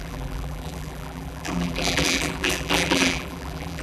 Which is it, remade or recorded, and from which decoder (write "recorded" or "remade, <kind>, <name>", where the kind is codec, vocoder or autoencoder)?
remade, vocoder, BigVGAN v2